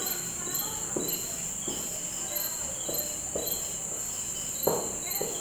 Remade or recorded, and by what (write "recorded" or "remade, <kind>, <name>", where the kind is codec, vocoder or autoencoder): recorded